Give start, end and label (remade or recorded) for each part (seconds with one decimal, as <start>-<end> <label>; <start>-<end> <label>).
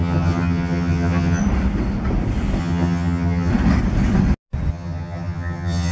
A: 0.0-1.4 remade; 1.4-2.6 recorded; 2.6-3.5 remade; 3.5-4.7 recorded; 4.7-5.9 remade